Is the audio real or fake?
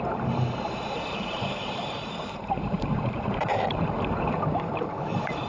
fake